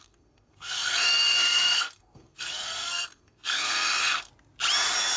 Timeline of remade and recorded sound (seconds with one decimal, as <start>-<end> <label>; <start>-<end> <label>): 0.0-4.3 remade; 4.3-5.2 recorded